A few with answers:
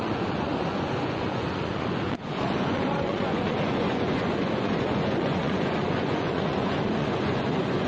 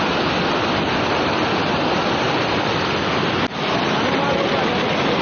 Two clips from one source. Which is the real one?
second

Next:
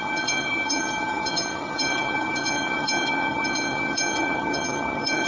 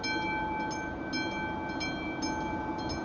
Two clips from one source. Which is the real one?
second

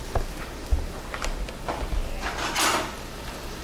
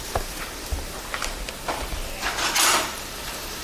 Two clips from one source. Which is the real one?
first